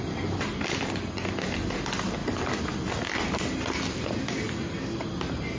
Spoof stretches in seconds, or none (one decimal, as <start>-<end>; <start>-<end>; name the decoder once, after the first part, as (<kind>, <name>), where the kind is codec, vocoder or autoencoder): none